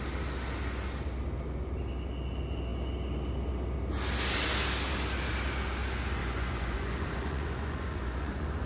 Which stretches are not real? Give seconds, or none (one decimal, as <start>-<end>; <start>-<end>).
6.2-8.7